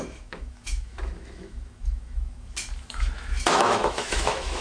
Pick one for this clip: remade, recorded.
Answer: remade